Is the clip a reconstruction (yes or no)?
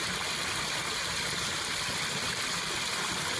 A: no